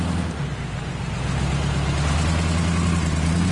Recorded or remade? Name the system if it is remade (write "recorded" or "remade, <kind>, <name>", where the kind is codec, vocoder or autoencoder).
recorded